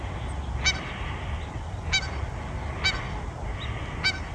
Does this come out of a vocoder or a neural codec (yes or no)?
no